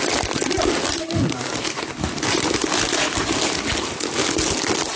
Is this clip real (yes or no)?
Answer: yes